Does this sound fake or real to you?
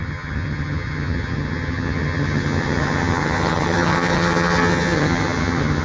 fake